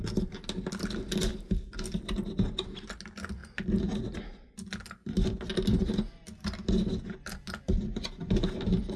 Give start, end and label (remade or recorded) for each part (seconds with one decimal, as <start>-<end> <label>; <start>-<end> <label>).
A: 0.0-9.0 recorded